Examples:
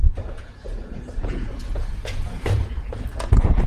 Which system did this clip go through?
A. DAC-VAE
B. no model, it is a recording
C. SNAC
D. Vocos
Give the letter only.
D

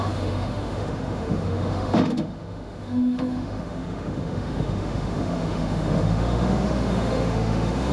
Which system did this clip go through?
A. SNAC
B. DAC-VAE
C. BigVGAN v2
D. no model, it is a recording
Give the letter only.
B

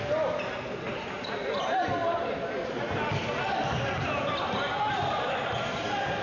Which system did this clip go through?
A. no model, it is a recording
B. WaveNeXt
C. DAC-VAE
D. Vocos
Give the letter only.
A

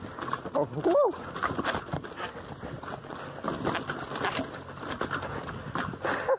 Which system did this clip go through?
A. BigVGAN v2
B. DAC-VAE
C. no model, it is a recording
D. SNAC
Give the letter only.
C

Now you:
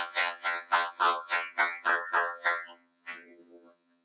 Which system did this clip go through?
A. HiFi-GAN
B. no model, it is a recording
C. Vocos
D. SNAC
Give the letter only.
A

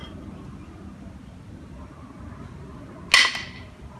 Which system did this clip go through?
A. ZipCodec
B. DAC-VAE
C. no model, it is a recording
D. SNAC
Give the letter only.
C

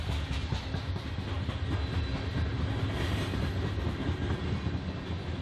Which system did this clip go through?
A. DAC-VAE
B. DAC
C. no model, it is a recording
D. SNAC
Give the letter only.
C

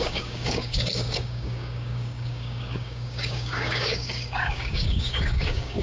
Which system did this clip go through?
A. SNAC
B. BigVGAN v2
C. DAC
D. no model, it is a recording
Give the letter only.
C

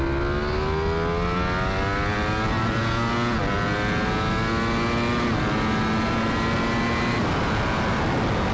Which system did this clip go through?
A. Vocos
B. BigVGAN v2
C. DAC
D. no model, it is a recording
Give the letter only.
D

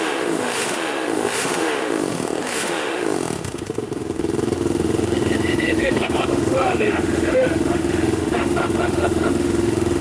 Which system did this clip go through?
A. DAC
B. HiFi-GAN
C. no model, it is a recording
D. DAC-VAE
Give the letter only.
D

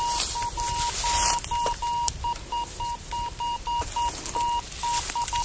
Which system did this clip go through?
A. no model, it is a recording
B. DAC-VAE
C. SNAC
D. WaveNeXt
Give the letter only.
A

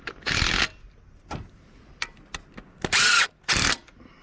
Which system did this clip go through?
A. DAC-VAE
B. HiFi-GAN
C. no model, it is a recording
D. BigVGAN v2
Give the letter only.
C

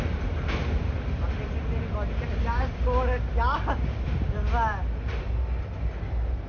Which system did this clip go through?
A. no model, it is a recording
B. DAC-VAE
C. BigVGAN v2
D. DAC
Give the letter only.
A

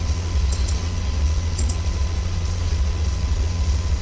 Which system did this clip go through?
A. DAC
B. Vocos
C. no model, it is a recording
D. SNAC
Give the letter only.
B